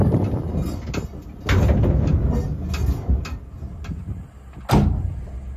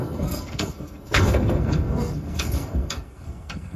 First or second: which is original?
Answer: first